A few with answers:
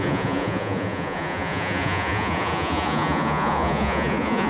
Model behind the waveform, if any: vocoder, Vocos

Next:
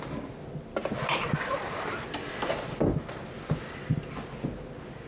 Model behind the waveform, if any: none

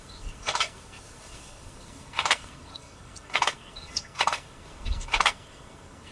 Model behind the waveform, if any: codec, SNAC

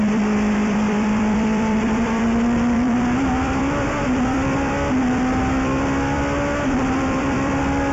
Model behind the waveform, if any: vocoder, BigVGAN v2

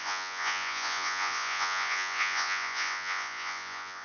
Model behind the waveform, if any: vocoder, Vocos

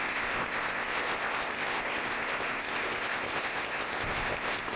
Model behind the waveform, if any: codec, ZipCodec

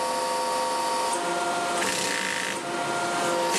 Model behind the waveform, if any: none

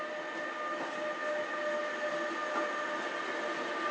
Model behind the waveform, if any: none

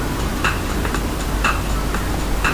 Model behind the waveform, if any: vocoder, BigVGAN v2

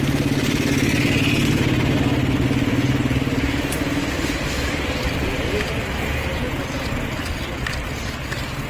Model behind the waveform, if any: none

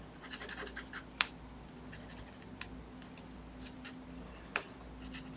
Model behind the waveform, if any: none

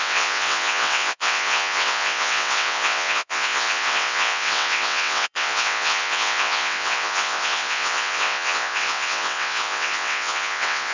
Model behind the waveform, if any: vocoder, WaveNeXt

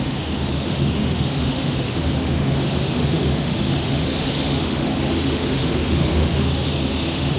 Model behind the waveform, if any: autoencoder, DAC-VAE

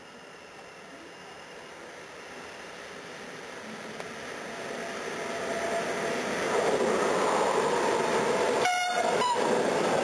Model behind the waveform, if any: none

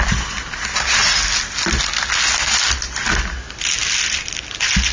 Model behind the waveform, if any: none